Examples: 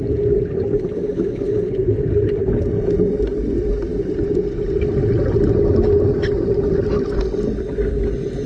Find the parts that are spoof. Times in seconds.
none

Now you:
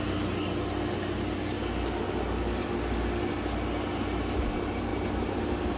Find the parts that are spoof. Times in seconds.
none

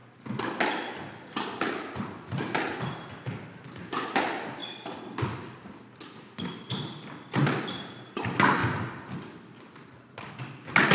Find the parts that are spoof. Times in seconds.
4.6-7.6; 8.6-10.3

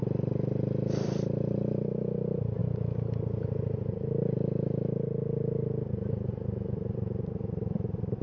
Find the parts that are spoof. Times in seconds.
0.0-2.6; 7.3-8.2

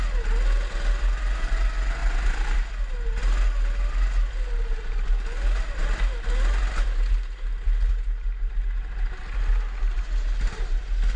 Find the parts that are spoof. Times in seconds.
none

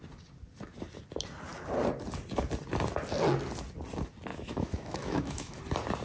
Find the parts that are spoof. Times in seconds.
4.3-5.6

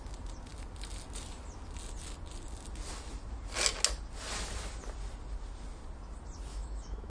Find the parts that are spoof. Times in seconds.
6.5-7.1

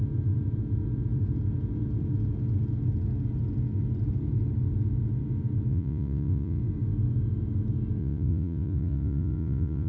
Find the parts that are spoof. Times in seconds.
5.7-6.6; 8.0-9.9